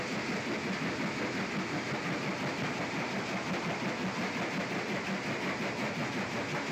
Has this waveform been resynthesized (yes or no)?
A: no